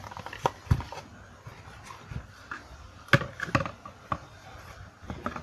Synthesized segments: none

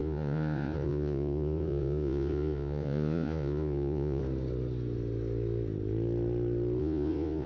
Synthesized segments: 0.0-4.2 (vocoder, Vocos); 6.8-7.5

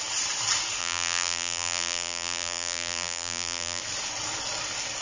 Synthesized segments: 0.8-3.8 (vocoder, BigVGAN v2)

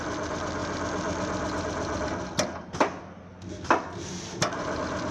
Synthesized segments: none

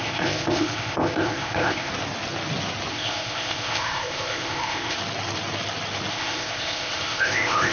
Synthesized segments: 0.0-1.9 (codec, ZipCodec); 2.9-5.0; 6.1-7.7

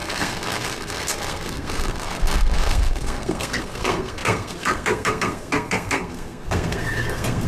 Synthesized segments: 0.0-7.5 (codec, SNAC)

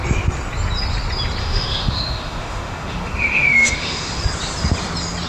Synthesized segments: 1.4-4.2 (autoencoder, DAC-VAE)

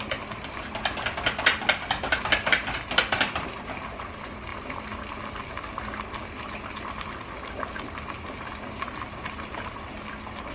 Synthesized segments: 4.5-5.2 (vocoder, BigVGAN v2)